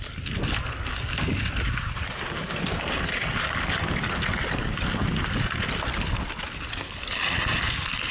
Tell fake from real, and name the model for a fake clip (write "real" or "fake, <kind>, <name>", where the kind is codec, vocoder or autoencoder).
real